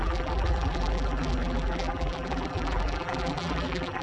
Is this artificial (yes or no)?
yes